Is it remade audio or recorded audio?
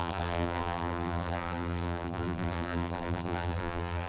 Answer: remade